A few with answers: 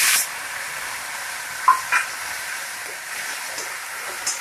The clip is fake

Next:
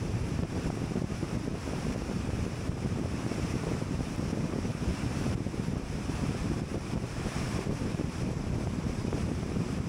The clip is fake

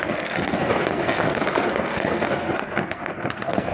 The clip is fake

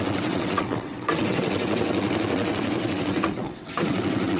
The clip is fake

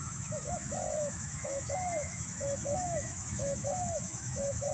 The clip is fake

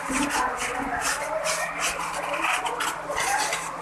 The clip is real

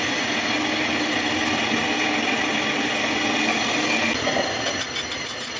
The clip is real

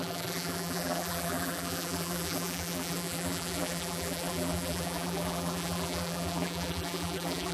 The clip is fake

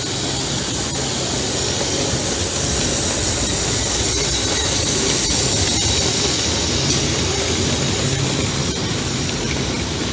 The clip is real